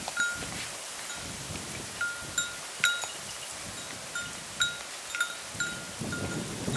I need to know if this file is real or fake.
real